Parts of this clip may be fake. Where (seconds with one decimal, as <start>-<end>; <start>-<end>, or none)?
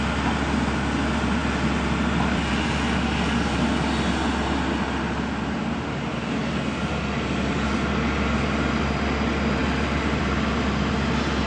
none